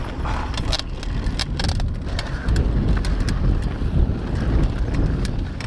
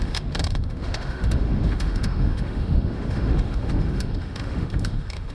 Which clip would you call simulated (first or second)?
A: second